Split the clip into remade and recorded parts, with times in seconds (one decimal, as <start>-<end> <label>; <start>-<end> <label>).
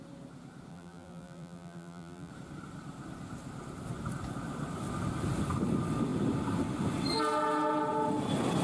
0.0-0.7 recorded; 0.7-2.3 remade; 2.3-8.6 recorded